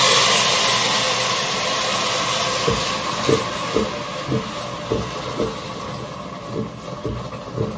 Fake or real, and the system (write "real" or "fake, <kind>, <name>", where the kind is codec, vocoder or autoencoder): real